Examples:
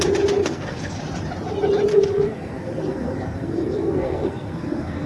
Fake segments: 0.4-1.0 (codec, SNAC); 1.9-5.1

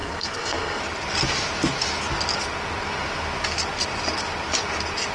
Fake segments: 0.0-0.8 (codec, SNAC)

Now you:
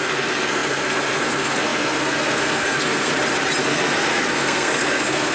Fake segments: 0.0-3.1 (codec, SNAC); 3.6-5.3